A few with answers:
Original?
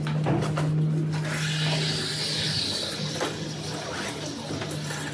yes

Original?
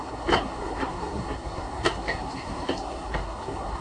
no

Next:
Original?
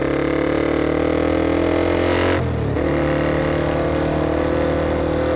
yes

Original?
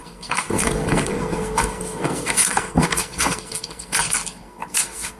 no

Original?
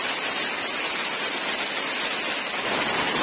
yes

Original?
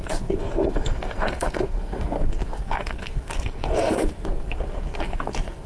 no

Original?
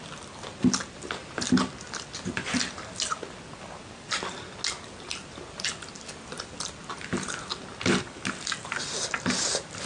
yes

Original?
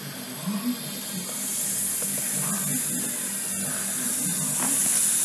yes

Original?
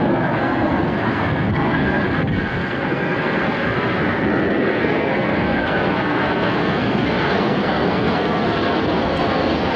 no